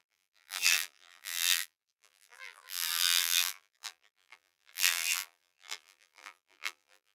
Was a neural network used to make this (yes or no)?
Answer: yes